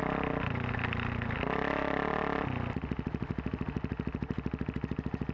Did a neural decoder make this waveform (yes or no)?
no